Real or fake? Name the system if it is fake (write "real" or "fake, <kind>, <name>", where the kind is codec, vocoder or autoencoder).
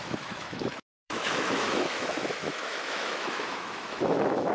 fake, autoencoder, DAC-VAE